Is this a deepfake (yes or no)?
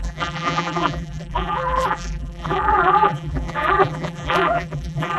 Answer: yes